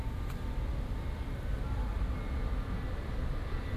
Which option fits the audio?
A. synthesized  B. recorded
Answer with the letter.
B